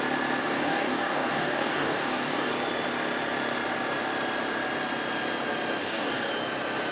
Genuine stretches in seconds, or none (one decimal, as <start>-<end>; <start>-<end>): 0.0-0.4; 2.5-5.8; 6.3-6.9